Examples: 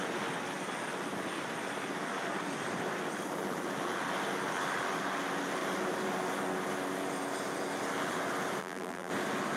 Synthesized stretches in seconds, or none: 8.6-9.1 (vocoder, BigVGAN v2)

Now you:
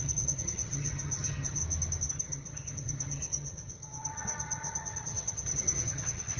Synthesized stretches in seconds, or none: 0.0-1.6 (vocoder, HiFi-GAN); 2.1-6.4

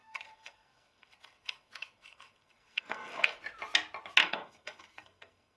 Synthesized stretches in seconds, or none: 0.0-3.4 (codec, SNAC); 4.2-5.6

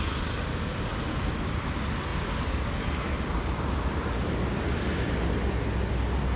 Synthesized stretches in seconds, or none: none

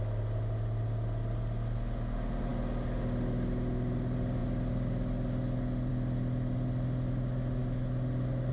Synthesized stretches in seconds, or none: none